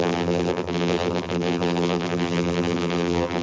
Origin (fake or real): fake